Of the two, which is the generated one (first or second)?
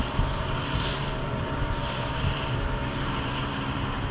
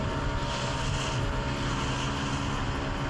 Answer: first